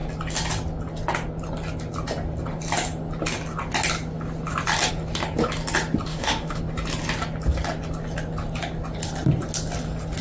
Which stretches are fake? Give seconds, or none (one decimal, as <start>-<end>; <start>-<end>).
6.1-6.6